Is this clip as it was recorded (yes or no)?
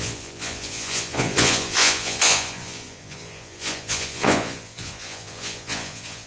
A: no